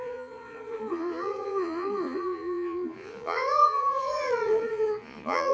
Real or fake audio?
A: fake